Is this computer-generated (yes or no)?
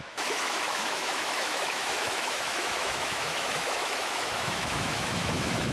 yes